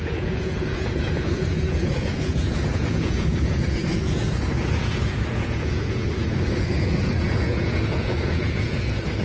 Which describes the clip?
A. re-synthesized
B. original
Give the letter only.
A